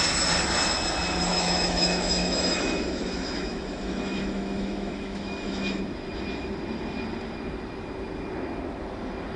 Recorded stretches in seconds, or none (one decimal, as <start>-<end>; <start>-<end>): 0.0-1.3; 5.8-9.4